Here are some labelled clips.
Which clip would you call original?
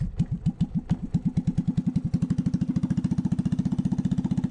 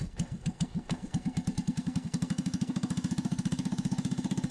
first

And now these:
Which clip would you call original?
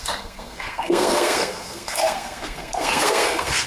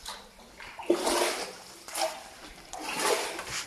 second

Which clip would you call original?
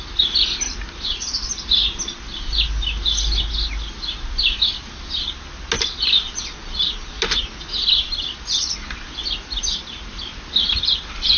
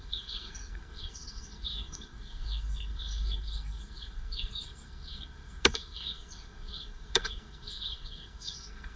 first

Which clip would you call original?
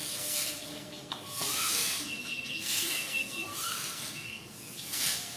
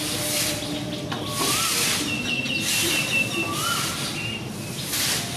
second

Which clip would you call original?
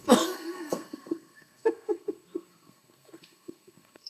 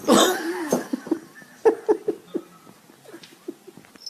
second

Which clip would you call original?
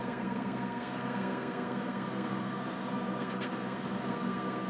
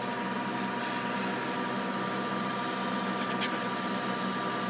second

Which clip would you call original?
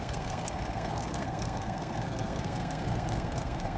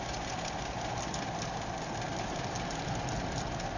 second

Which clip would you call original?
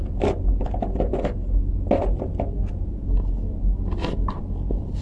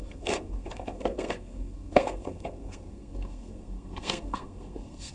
first